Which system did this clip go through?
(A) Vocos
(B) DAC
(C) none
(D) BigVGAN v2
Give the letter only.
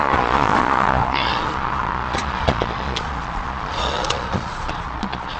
A